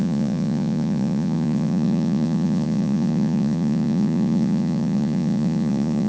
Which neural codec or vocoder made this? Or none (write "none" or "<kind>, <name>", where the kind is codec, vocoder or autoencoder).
vocoder, Vocos